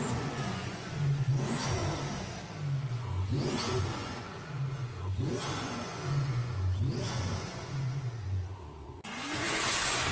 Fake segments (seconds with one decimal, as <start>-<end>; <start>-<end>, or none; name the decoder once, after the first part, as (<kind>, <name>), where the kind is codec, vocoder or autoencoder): 0.0-1.8 (vocoder, Vocos); 3.0-10.1